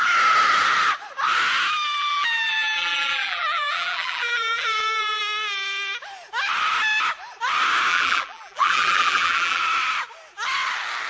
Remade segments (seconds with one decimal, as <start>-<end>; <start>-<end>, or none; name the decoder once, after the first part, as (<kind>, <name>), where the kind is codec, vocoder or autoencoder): 2.0-5.2 (vocoder, BigVGAN v2); 7.9-9.6